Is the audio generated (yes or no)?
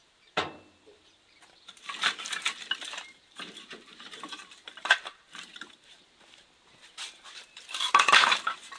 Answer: yes